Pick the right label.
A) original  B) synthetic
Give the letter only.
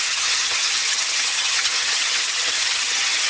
B